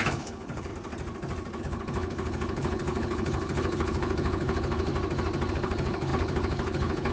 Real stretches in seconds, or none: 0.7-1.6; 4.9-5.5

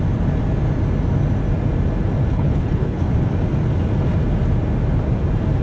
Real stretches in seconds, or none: 0.0-2.3; 3.1-5.6

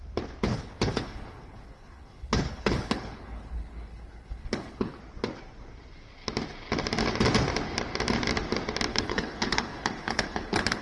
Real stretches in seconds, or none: 0.0-0.5; 5.0-8.9

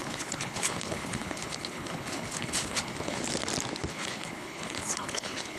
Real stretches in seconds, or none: 3.2-3.9

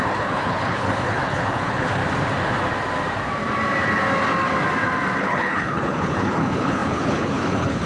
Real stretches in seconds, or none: 2.0-5.2